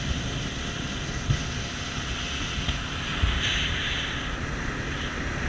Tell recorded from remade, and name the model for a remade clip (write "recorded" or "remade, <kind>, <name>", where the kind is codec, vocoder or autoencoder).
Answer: recorded